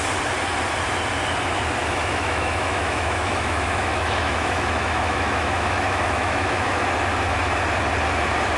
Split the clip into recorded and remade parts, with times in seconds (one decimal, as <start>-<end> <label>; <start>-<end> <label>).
0.0-1.8 recorded; 1.8-6.8 remade; 6.8-8.6 recorded